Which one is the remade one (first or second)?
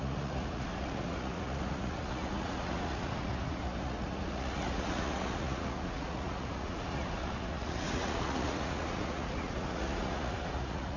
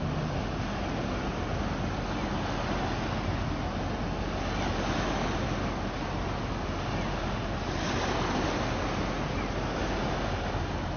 first